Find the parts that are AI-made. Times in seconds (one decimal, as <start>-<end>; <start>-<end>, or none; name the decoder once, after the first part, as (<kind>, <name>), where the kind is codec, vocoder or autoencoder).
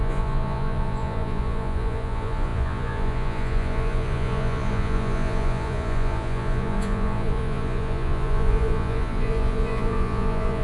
0.0-10.6 (vocoder, Vocos)